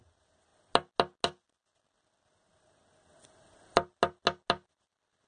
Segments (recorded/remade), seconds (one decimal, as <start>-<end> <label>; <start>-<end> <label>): 0.0-5.3 recorded